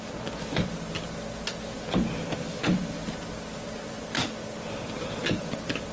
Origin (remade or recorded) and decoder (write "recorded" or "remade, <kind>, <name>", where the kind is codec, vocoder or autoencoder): recorded